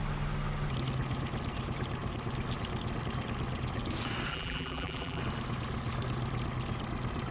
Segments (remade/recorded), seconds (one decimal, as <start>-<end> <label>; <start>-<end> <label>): 0.0-4.3 recorded; 4.3-5.2 remade; 5.2-7.3 recorded